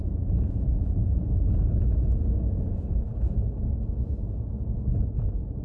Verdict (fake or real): fake